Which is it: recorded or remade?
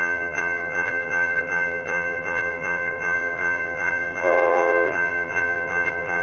remade